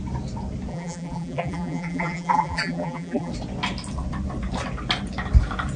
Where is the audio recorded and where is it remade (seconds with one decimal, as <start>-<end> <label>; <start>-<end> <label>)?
0.0-0.7 recorded; 0.7-3.3 remade; 3.3-5.8 recorded